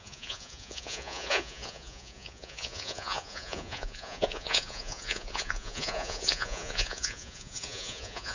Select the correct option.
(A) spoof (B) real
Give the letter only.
A